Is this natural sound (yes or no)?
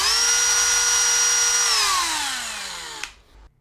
yes